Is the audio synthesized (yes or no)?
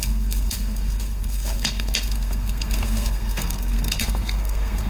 yes